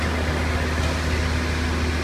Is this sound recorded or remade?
recorded